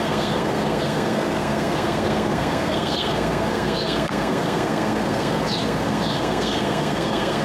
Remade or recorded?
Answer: remade